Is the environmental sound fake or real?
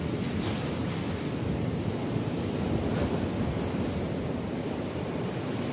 fake